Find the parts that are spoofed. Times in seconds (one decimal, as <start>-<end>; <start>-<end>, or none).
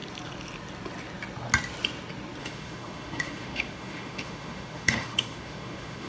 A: 2.4-6.1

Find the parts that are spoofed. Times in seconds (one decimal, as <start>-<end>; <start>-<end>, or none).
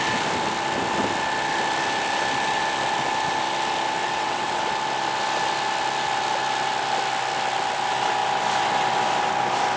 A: 4.0-4.6